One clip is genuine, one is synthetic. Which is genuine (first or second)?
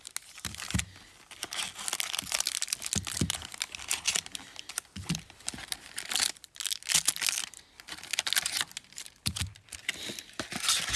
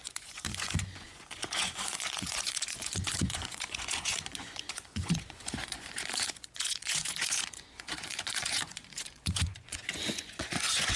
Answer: first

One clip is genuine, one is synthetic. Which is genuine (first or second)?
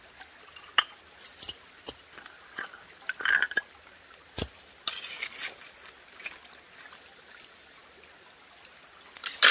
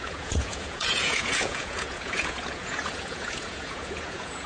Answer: first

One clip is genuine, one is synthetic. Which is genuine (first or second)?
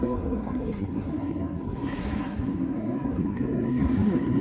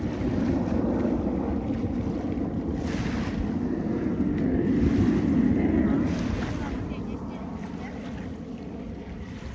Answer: second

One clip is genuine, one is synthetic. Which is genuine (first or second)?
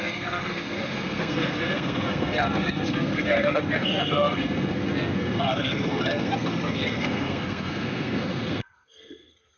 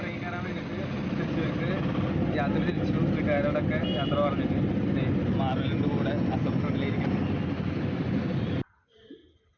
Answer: second